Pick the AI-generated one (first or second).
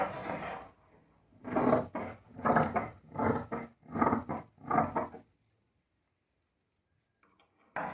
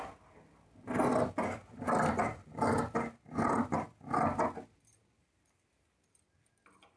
second